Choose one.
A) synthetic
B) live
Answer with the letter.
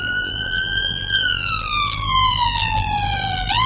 A